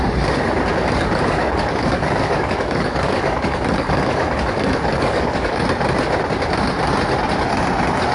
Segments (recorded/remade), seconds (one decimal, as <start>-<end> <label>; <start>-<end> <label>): 0.0-0.7 recorded; 0.7-5.6 remade; 5.6-8.1 recorded